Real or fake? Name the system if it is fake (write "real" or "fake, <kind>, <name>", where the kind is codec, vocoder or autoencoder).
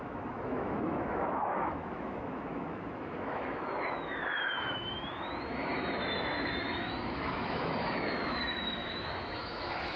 fake, autoencoder, DAC-VAE